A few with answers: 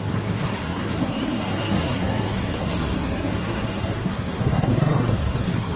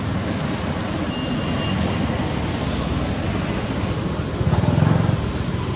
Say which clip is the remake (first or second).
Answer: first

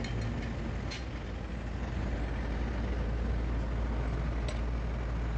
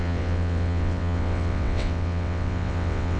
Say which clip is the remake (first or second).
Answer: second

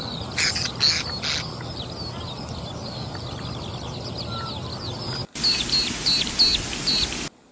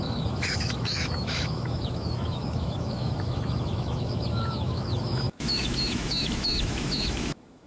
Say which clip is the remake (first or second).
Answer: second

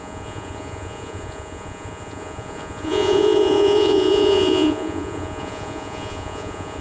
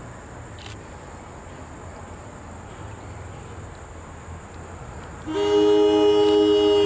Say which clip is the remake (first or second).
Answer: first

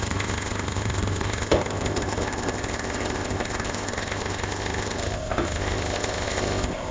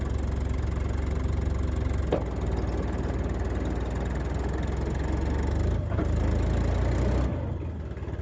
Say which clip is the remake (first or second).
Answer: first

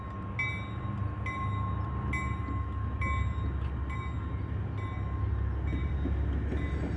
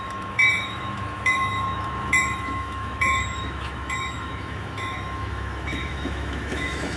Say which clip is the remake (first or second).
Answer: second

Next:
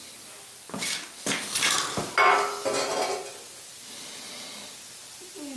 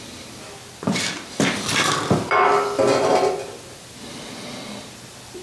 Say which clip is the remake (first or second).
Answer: second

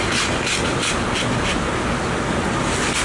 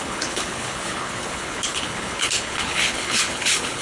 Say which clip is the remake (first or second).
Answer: second